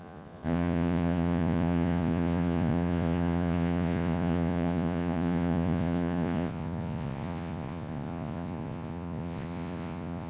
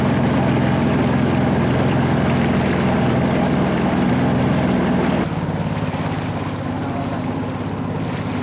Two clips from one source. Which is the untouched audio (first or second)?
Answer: second